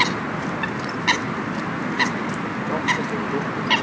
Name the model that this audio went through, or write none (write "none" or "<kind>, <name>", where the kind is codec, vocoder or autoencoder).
none